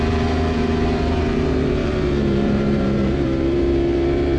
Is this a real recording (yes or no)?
no